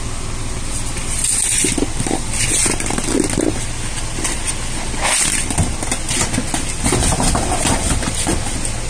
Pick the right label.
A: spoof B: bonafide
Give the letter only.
B